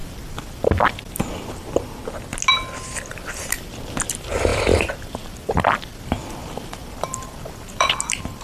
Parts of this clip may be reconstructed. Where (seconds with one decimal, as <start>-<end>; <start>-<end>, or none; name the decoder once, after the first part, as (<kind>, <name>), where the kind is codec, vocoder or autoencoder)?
0.0-2.0 (vocoder, BigVGAN v2); 3.1-8.4